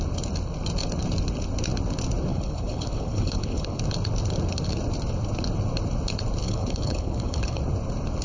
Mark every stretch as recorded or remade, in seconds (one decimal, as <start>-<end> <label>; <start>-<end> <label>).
0.0-2.3 recorded; 2.3-3.8 remade; 3.8-6.4 recorded; 6.4-7.6 remade; 7.6-8.2 recorded